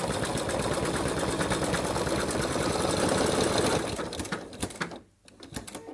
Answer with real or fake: real